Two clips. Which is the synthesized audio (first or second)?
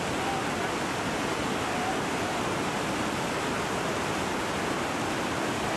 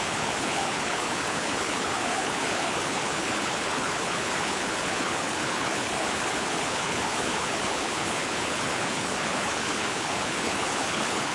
second